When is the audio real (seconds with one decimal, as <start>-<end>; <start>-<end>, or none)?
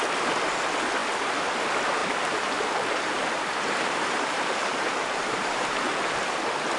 0.0-2.0; 6.1-6.8